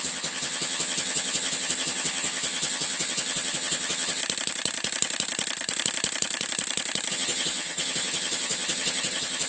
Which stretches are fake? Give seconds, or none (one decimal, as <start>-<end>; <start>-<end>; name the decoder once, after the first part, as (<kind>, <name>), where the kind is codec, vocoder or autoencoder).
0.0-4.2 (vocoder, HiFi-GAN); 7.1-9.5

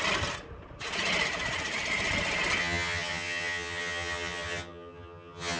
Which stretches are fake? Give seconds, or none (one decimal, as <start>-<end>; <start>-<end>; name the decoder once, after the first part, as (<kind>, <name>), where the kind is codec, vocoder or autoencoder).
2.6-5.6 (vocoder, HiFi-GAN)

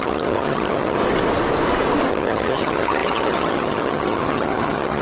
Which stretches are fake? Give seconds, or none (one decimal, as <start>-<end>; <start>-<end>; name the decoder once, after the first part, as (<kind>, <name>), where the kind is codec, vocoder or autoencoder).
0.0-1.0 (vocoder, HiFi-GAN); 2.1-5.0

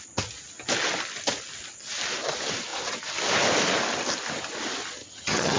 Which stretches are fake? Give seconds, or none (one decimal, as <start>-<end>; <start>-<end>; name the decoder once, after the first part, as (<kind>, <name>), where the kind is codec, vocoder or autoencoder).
5.0-5.6 (vocoder, HiFi-GAN)

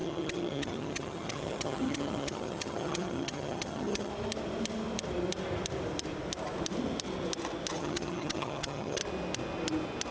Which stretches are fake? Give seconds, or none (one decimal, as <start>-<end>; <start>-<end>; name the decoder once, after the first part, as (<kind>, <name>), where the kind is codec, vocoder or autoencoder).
0.0-4.1 (vocoder, HiFi-GAN); 7.8-9.0

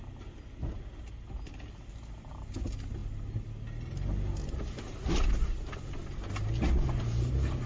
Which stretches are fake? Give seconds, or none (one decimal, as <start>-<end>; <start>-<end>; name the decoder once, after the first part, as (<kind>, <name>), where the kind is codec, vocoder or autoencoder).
none

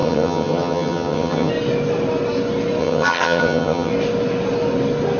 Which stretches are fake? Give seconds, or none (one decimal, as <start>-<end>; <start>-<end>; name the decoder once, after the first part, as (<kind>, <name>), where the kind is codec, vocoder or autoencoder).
0.0-1.5 (vocoder, HiFi-GAN); 2.8-3.9